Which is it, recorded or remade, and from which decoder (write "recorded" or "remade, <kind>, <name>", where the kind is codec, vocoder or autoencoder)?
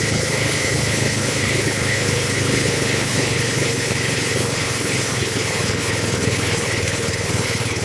remade, codec, HILCodec